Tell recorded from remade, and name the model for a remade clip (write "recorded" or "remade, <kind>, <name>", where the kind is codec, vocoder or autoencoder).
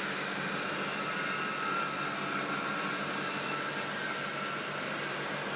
recorded